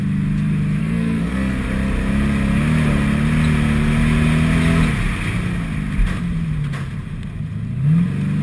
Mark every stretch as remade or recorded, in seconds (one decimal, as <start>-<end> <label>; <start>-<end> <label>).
0.0-0.8 recorded; 0.8-1.6 remade; 1.6-8.4 recorded